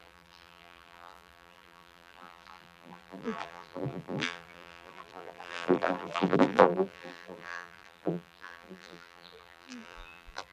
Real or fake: fake